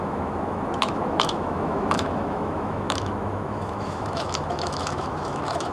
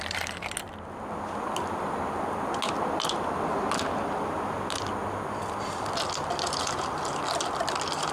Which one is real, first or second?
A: second